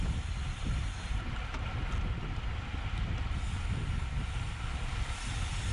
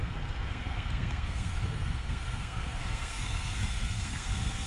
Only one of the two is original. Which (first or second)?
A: first